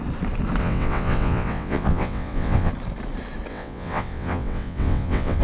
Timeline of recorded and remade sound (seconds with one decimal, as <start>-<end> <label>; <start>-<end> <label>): 0.0-0.6 recorded; 0.6-2.7 remade; 2.7-3.5 recorded; 3.5-5.4 remade